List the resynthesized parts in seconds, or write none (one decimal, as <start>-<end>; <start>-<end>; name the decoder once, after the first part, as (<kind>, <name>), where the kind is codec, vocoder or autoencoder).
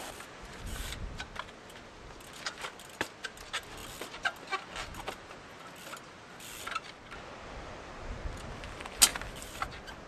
none